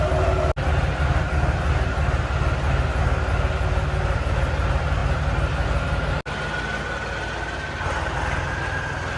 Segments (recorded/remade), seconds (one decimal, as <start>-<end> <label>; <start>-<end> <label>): 0.0-9.2 recorded